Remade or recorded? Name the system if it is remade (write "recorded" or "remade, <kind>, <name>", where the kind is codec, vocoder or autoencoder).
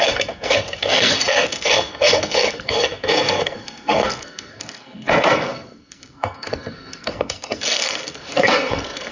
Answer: remade, codec, SNAC